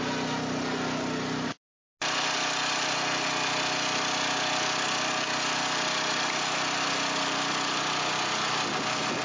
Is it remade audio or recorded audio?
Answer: recorded